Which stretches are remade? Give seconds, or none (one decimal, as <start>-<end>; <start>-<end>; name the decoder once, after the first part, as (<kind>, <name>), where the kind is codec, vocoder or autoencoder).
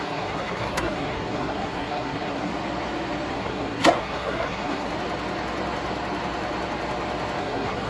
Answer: 0.0-2.5 (codec, SNAC); 3.3-4.9; 7.4-7.9